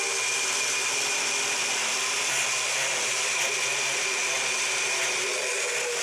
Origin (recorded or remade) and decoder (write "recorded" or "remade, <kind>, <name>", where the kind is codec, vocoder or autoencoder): recorded